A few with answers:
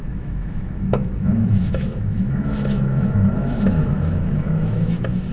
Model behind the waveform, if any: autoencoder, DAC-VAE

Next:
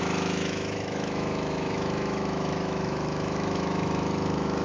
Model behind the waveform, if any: autoencoder, DAC-VAE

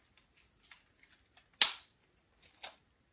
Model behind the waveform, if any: none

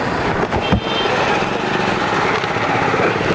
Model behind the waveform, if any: none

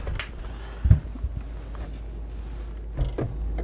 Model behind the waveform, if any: none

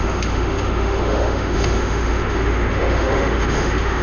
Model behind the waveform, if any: autoencoder, DAC-VAE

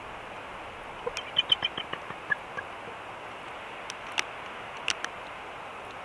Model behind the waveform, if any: none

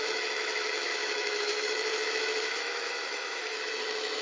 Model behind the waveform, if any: autoencoder, DAC-VAE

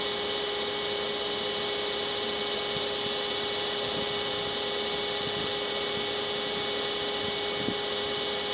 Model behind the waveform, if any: none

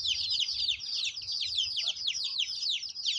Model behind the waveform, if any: none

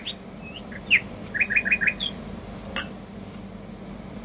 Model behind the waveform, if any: none